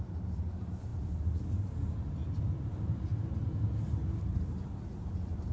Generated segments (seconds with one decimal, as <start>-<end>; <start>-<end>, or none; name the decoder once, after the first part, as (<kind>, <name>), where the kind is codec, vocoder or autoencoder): 0.0-0.9 (vocoder, BigVGAN v2); 2.6-3.1; 4.9-5.5